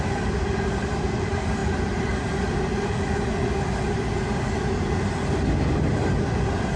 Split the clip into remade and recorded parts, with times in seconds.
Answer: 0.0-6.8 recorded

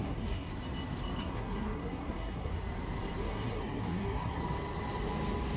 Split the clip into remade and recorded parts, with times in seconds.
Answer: 0.0-0.5 remade; 0.5-1.2 recorded; 1.2-2.5 remade; 2.5-3.2 recorded; 3.2-4.4 remade; 4.4-5.6 recorded

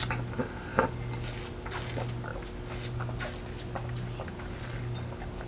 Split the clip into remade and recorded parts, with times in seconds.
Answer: 0.0-5.5 recorded

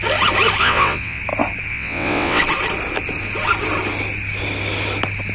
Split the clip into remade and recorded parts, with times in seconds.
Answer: 0.0-0.6 recorded; 0.6-1.2 remade; 1.2-1.7 recorded; 1.7-2.4 remade; 2.4-5.3 recorded